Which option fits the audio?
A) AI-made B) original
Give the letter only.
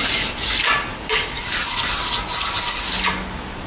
B